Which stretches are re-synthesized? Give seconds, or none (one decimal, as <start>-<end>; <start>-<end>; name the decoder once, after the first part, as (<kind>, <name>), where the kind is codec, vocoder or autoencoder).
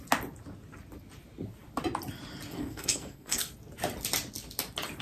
2.5-3.5 (codec, SNAC)